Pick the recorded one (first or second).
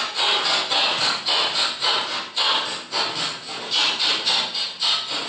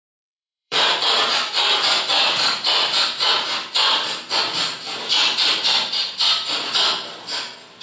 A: first